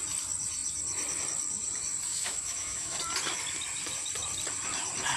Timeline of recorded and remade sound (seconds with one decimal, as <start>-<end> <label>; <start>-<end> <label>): 0.0-2.1 recorded; 2.1-3.0 remade; 3.0-5.2 recorded